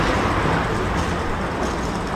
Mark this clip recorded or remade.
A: recorded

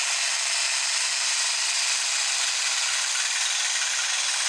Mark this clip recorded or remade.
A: recorded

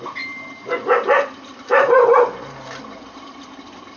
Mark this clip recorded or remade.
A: recorded